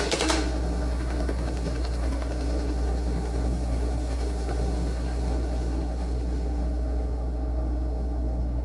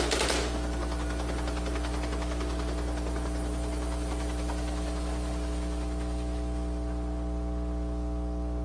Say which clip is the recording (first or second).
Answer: second